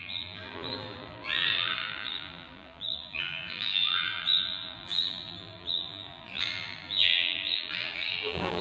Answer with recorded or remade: remade